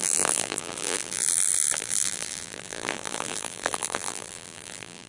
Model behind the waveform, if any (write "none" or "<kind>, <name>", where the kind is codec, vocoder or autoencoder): vocoder, BigVGAN v2